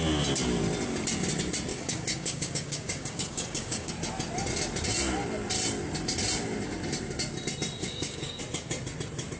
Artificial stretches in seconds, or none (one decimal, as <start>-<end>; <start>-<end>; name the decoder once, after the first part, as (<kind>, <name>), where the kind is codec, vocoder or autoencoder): 1.7-3.9 (codec, DAC); 7.8-8.4